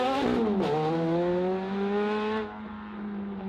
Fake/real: real